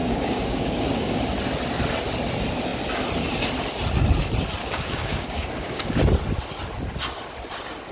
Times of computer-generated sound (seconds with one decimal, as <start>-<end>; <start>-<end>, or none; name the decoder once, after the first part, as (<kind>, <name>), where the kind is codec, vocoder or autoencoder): 0.0-1.2 (codec, DAC); 4.6-6.0